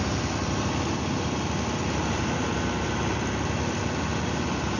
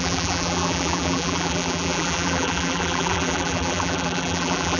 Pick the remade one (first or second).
second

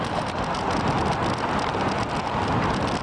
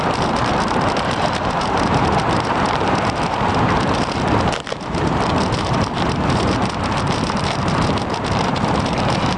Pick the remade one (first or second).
second